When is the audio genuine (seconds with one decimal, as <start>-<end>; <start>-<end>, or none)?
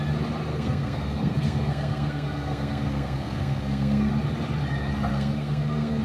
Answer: 0.0-0.5; 4.1-5.1